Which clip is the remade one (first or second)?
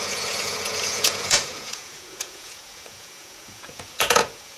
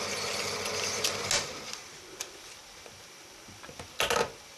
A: first